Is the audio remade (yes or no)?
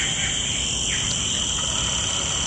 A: no